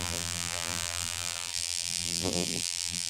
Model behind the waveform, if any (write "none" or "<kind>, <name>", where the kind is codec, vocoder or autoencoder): vocoder, BigVGAN v2